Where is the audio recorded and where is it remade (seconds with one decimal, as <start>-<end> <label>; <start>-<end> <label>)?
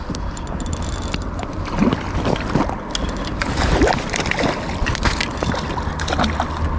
0.0-6.8 recorded